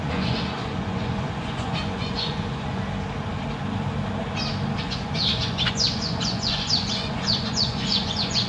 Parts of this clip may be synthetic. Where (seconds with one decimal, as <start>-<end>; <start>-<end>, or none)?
0.0-2.8; 4.8-8.5